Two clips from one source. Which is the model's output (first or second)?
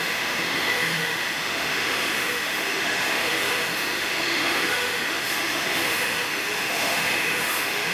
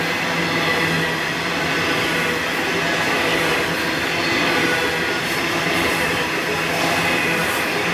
first